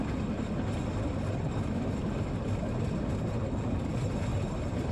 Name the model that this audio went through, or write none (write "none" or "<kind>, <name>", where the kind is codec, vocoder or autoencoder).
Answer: none